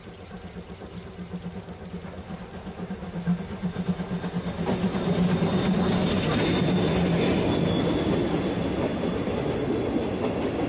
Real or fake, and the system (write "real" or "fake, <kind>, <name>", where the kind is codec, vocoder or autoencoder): real